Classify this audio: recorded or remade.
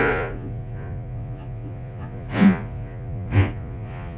remade